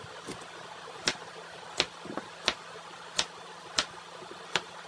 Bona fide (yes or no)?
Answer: yes